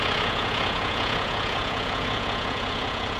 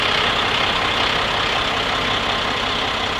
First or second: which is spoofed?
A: first